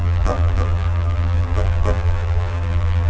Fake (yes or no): yes